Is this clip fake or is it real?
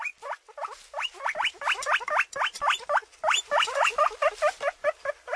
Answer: real